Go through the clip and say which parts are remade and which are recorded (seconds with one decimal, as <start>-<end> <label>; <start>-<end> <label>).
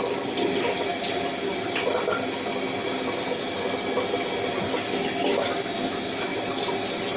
0.0-7.2 recorded